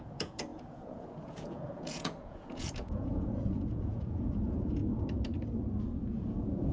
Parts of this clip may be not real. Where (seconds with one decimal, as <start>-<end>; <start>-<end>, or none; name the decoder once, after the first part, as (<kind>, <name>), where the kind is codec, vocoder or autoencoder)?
0.0-4.8 (vocoder, Vocos); 6.0-6.7